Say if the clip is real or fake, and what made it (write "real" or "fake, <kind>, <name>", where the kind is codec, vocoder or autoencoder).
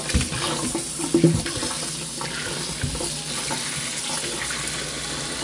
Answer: real